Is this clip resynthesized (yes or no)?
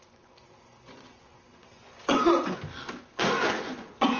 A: yes